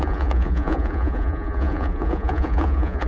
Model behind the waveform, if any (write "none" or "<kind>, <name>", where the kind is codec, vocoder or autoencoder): vocoder, Vocos